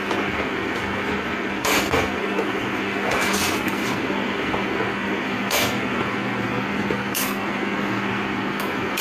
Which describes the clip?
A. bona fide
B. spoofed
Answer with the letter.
B